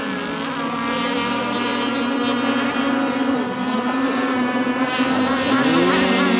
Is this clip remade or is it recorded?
recorded